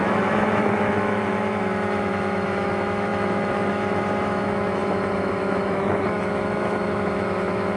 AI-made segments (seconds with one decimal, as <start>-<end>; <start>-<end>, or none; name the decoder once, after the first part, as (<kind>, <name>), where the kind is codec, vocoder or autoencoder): 0.0-7.8 (autoencoder, DAC-VAE)